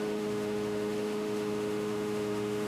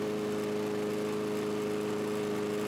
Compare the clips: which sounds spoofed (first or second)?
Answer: first